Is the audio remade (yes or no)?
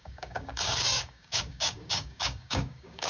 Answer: yes